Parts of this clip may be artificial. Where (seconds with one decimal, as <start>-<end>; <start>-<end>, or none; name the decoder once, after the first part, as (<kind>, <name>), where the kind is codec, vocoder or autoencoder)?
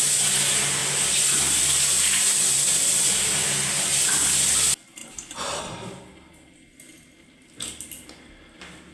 none